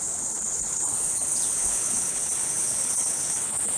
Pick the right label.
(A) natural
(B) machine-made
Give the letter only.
B